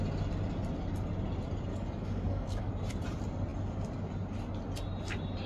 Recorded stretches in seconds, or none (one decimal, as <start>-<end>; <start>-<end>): 0.0-1.7; 2.7-5.5